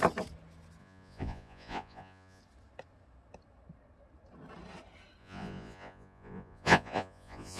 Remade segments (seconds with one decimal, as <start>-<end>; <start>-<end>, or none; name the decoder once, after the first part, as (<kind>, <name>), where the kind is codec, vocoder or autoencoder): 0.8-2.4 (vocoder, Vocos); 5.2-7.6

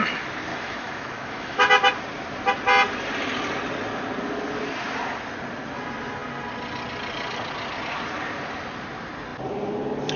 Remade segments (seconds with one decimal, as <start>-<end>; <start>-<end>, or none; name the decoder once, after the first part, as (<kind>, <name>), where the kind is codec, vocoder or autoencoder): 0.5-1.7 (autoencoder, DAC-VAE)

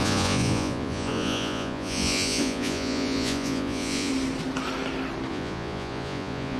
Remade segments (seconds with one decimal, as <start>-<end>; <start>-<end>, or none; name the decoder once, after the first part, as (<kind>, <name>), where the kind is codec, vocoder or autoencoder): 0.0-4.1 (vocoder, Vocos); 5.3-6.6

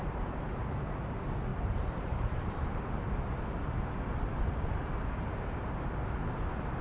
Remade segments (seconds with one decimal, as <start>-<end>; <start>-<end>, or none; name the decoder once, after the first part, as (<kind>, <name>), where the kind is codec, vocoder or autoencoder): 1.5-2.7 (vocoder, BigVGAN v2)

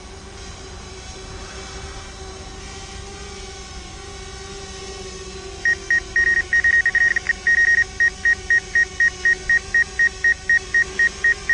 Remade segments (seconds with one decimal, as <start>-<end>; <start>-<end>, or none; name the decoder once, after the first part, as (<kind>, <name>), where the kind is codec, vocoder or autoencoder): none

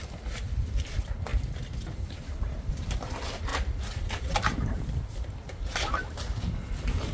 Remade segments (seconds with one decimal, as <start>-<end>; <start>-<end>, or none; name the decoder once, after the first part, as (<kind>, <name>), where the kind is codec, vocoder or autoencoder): 0.0-1.3 (vocoder, BigVGAN v2); 2.7-7.1

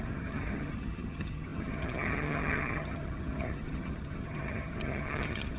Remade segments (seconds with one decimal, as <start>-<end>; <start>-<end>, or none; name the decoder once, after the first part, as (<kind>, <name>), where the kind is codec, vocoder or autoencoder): 0.0-5.6 (vocoder, HiFi-GAN)